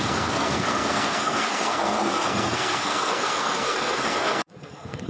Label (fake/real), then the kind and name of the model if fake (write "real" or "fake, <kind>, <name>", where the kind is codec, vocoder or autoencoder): fake, codec, SNAC